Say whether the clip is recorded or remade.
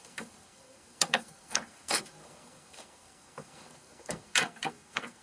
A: remade